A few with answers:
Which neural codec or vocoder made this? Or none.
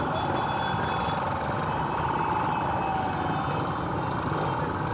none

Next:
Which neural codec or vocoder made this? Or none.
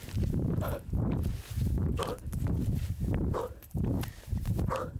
vocoder, BigVGAN v2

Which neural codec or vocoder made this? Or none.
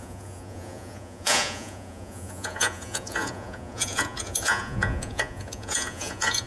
vocoder, Vocos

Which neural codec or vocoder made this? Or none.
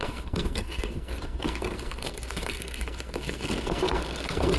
codec, SNAC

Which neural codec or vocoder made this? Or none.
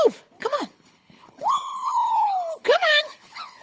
codec, HILCodec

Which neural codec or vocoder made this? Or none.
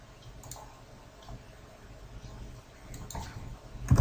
none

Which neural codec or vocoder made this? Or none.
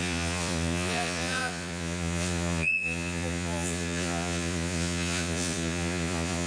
vocoder, Vocos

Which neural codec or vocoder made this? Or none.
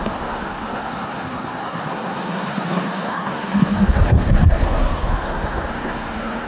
codec, SNAC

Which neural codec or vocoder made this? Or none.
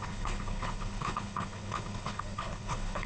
codec, HILCodec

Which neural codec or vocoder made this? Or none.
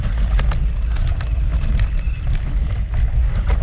none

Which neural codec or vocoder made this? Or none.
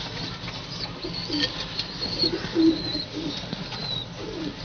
none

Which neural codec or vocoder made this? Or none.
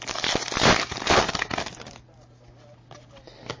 none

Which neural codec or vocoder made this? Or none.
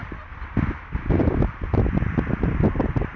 none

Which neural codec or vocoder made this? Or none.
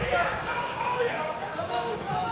codec, DAC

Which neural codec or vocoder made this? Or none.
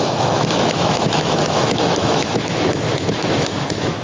autoencoder, DAC-VAE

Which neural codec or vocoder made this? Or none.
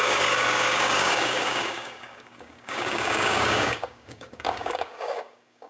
codec, DAC